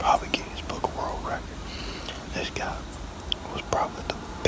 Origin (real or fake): real